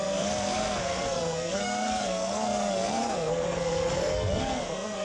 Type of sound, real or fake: fake